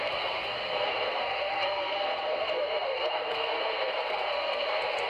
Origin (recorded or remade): remade